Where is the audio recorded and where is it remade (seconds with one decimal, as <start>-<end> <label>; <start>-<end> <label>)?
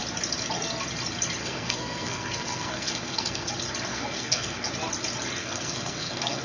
0.0-1.4 recorded; 1.4-3.5 remade; 3.5-3.9 recorded; 3.9-4.7 remade; 4.7-5.4 recorded; 5.4-6.4 remade